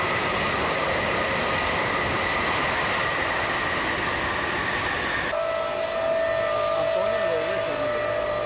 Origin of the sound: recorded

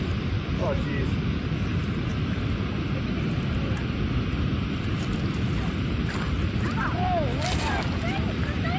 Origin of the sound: remade